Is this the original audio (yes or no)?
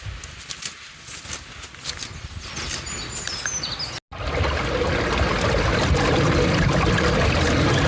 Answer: yes